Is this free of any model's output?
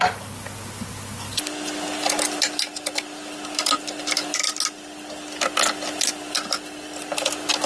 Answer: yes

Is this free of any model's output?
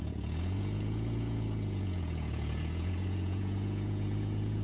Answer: no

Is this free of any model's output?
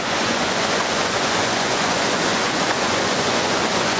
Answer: no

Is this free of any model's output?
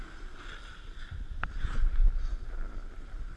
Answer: yes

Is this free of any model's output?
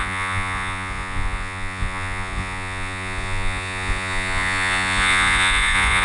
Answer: no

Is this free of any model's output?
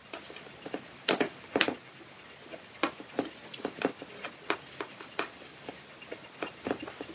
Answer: yes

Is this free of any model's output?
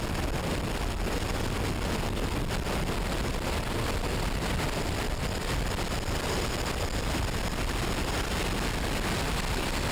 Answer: yes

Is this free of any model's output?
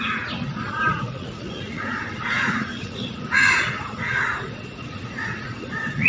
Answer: no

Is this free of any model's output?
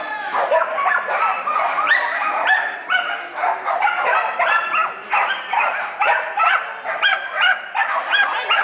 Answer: yes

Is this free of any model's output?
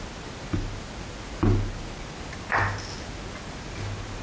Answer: yes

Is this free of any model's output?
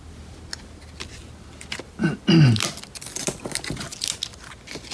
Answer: yes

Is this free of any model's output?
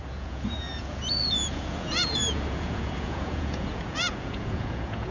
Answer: no